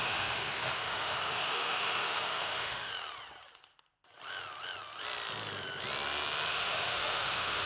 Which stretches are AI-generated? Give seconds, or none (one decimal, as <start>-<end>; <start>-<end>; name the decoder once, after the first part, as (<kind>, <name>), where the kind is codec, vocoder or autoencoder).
0.0-2.9 (autoencoder, DAC-VAE); 6.5-7.7

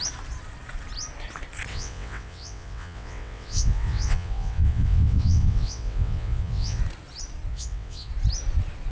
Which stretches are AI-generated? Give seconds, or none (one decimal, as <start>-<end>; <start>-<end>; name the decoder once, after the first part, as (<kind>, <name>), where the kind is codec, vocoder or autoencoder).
1.7-6.8 (vocoder, WaveNeXt); 7.5-8.1

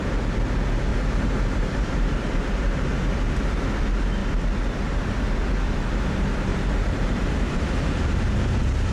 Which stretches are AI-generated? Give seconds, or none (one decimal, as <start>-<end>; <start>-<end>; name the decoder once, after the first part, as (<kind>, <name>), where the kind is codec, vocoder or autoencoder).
0.9-2.9 (vocoder, BigVGAN v2); 6.5-8.2